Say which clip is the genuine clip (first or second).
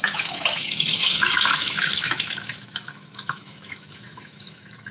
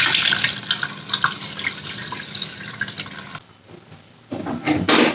second